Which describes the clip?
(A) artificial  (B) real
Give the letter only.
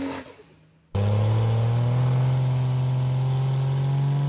B